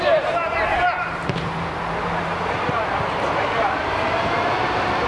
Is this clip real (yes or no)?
no